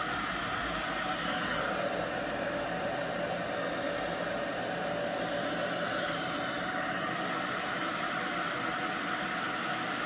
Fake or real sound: real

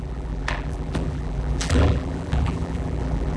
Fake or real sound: fake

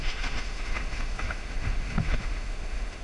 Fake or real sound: fake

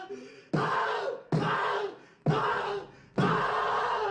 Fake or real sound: real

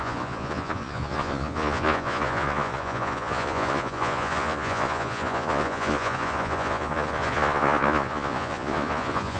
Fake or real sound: fake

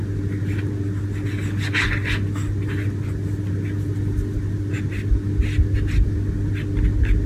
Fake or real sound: real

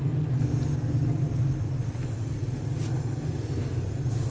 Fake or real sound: real